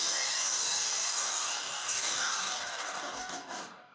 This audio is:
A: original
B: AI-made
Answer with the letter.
B